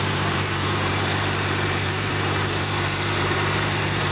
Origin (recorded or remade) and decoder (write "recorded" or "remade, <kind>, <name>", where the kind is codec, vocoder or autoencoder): remade, vocoder, BigVGAN v2